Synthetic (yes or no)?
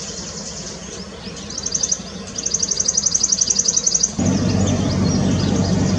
no